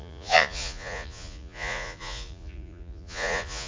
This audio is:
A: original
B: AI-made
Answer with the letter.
B